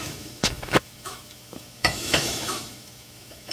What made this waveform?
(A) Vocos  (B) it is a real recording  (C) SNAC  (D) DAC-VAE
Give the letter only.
D